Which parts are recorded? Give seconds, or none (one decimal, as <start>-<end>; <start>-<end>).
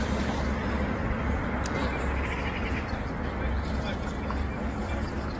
1.0-2.4; 4.5-5.4